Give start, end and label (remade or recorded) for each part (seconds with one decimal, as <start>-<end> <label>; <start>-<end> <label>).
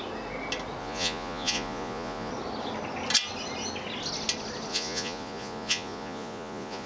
0.0-0.8 recorded; 0.8-2.3 remade; 2.3-4.7 recorded; 4.7-6.9 remade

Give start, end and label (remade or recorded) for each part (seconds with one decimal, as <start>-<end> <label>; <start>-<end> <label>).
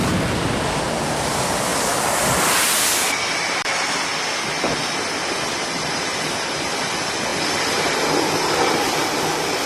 0.0-1.7 remade; 1.7-2.4 recorded; 2.4-4.1 remade; 4.1-4.9 recorded; 4.9-9.7 remade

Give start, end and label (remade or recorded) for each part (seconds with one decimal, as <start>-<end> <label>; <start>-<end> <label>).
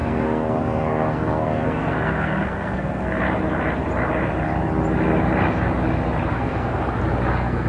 0.0-3.2 remade; 3.2-6.3 recorded; 6.3-6.8 remade; 6.8-7.3 recorded; 7.3-7.7 remade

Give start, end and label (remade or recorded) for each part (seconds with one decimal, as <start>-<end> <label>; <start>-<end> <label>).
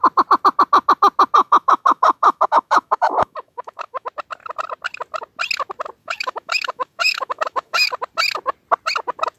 0.0-1.4 recorded; 1.4-4.1 remade; 4.1-6.0 recorded; 6.0-7.9 remade; 7.9-9.4 recorded